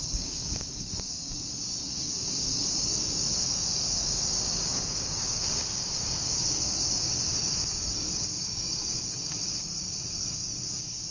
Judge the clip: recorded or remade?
remade